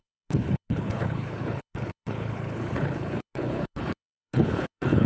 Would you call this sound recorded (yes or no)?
no